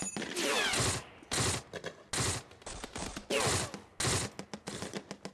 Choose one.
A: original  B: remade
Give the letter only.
A